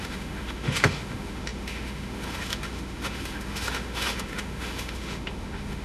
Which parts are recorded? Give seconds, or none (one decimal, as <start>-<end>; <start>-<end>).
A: none